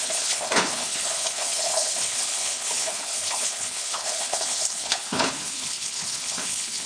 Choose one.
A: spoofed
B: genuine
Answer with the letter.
A